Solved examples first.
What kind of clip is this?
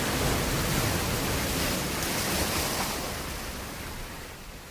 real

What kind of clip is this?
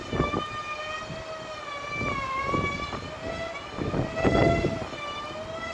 real